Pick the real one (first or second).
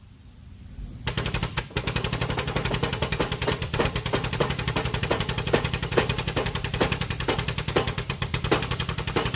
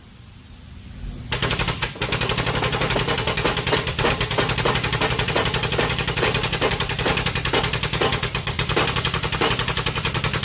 second